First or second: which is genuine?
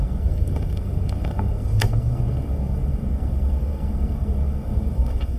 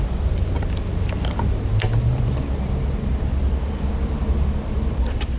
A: second